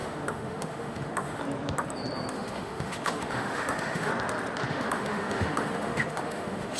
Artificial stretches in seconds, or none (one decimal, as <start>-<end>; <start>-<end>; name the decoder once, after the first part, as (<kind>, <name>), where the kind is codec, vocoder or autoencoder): 0.0-1.4 (autoencoder, DAC-VAE); 2.3-4.1; 4.7-6.8